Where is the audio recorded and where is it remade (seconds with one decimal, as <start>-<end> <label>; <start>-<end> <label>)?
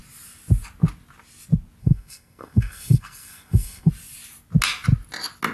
0.0-1.8 recorded; 1.8-3.9 remade; 3.9-5.5 recorded